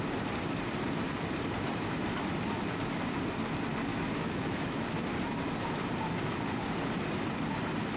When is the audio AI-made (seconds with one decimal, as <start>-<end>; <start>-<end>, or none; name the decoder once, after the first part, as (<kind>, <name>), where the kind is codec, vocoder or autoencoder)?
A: 3.9-4.8 (autoencoder, DAC-VAE)